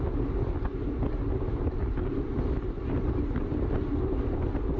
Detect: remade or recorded recorded